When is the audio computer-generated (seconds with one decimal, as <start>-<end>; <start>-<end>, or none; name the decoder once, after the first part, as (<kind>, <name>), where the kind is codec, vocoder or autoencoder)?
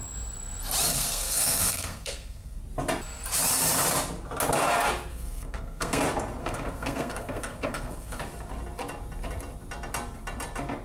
0.9-2.6 (codec, SNAC); 5.1-6.0; 6.4-8.2